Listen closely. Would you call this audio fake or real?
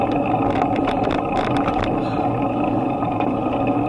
real